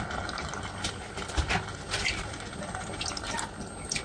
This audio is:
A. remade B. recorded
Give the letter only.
B